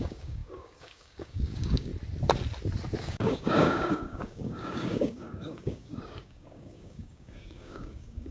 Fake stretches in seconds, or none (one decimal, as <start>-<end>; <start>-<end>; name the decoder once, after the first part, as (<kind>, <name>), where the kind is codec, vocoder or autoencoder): 0.0-1.9 (codec, DAC); 3.0-8.3